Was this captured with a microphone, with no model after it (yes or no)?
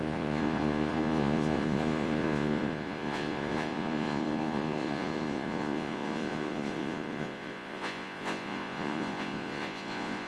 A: no